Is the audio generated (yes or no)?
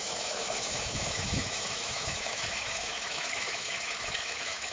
yes